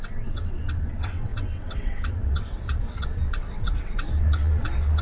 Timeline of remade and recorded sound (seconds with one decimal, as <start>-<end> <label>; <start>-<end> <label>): 0.0-5.0 remade